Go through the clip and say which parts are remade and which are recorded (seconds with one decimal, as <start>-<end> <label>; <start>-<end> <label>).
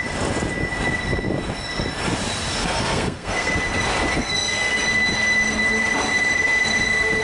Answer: 0.0-2.6 recorded; 2.6-3.5 remade; 3.5-4.1 recorded; 4.1-4.7 remade; 4.7-7.2 recorded